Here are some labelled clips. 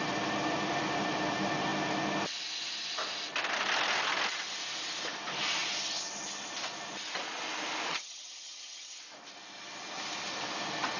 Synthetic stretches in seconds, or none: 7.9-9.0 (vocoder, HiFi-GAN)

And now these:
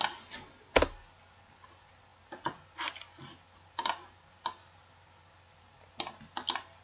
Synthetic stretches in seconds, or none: none

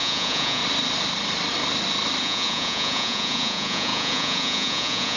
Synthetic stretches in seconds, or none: 0.0-0.6 (vocoder, Vocos); 2.2-5.2

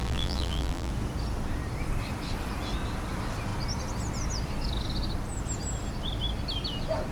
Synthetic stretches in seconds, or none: 0.0-0.9 (vocoder, BigVGAN v2)

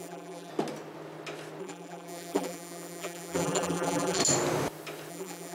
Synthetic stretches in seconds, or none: 0.0-0.5 (vocoder, BigVGAN v2); 1.6-4.2; 5.1-5.5